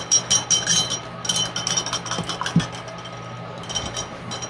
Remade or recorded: recorded